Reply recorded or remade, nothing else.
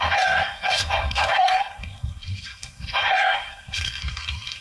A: remade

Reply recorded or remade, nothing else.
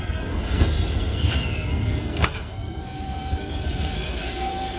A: remade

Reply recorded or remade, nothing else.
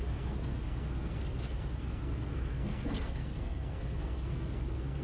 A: remade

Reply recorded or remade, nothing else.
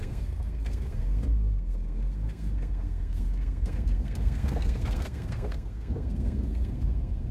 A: remade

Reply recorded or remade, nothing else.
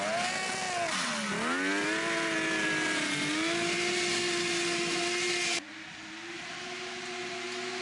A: recorded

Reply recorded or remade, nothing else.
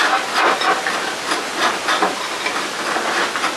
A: recorded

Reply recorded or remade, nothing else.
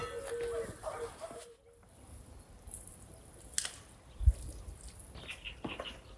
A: recorded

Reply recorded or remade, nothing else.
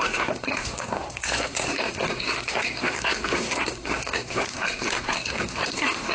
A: remade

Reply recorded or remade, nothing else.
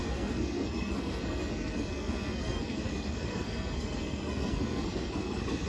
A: remade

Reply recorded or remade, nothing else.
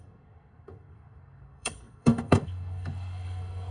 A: remade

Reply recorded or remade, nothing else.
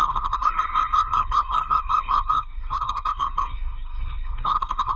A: remade